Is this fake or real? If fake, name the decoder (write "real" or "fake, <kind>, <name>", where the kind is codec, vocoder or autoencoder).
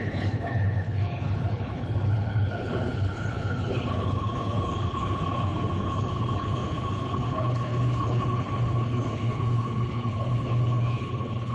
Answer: fake, codec, HILCodec